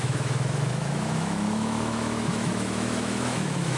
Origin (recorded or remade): remade